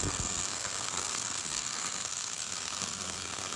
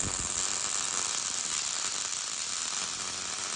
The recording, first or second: second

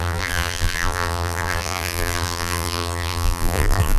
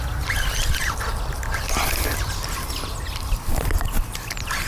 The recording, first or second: second